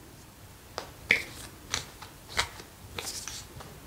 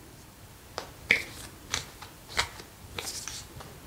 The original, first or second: first